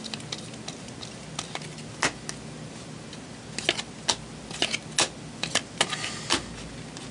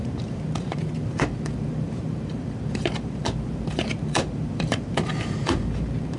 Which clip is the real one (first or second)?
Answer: first